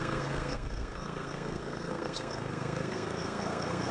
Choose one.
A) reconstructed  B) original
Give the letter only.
A